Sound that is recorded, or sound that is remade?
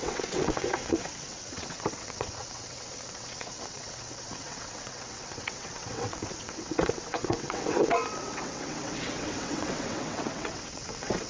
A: remade